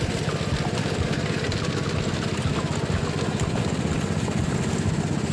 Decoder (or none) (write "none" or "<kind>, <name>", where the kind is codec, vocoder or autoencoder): none